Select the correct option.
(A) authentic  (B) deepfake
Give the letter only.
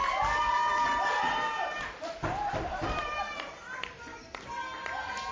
A